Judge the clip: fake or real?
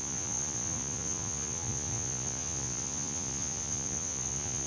fake